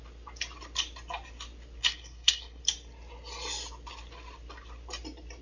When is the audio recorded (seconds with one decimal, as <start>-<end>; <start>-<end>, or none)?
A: 0.0-1.8; 2.6-5.4